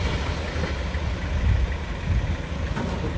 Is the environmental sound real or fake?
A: real